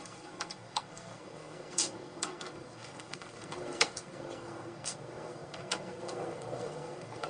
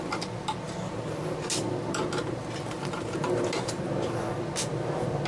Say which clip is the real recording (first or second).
second